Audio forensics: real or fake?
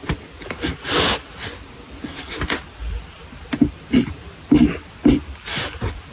real